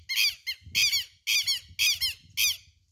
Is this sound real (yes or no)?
yes